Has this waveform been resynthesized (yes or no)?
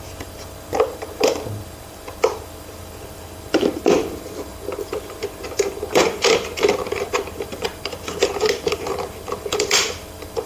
yes